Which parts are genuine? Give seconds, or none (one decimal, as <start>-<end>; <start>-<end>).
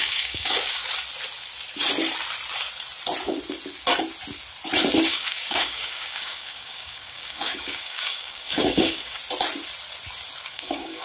0.8-5.1; 9.2-10.5